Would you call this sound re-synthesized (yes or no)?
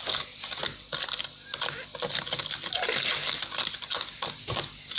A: no